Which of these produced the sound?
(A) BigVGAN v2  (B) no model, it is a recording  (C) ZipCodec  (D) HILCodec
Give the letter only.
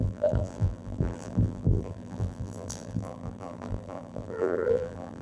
A